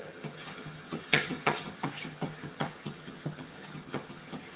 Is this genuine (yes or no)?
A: no